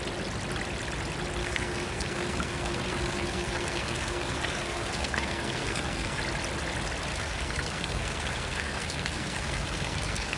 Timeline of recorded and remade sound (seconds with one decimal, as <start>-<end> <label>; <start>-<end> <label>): 0.0-1.4 recorded; 1.4-6.2 remade; 6.2-7.1 recorded; 7.1-10.4 remade